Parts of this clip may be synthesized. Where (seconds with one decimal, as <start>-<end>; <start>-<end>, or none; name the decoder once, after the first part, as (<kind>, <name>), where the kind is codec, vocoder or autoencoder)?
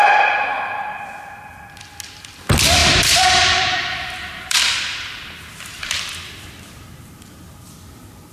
2.8-6.3 (vocoder, BigVGAN v2)